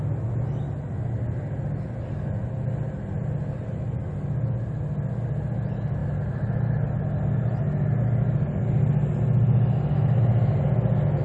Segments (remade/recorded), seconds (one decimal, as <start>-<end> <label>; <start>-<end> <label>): 0.0-11.2 recorded